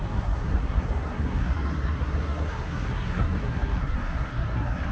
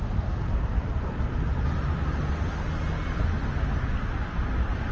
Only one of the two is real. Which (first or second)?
second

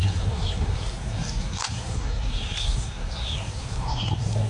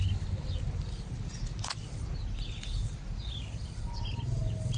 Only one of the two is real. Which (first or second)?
second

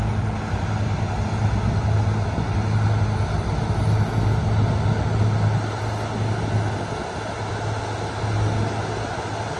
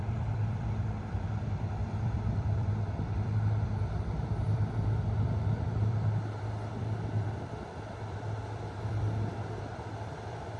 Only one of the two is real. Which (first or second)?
first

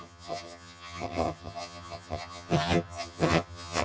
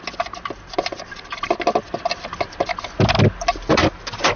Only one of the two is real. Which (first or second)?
second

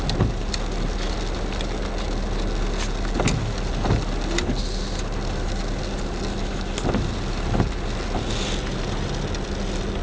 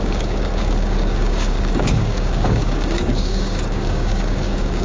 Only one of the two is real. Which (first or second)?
first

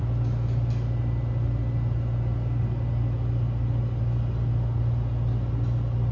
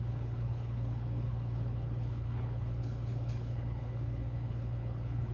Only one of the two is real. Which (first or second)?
first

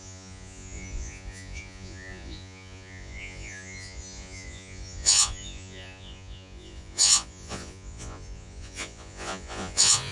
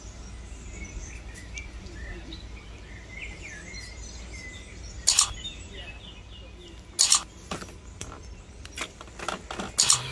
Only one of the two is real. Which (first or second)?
second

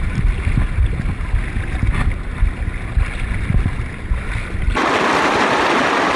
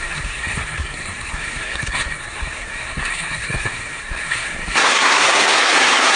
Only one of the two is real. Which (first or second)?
first